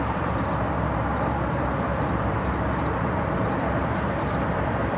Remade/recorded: remade